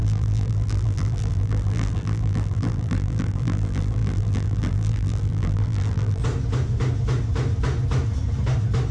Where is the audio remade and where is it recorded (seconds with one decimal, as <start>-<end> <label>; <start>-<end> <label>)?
0.0-6.2 remade; 6.2-8.9 recorded